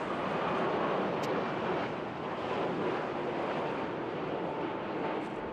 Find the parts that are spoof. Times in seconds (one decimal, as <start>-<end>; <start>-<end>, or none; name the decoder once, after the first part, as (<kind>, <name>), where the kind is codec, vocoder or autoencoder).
none

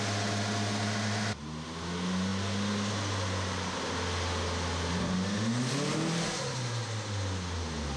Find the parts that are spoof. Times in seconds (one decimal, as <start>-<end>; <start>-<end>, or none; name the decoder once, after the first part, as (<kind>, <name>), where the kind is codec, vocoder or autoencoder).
none